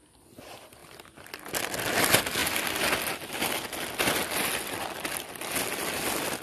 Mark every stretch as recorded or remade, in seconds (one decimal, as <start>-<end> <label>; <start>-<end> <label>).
0.0-6.4 recorded

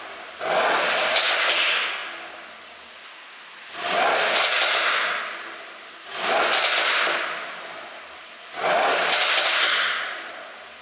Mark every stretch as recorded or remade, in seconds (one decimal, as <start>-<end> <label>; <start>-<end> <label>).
0.0-10.8 recorded